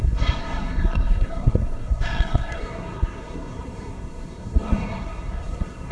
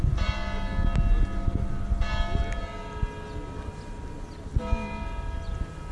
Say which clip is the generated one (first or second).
first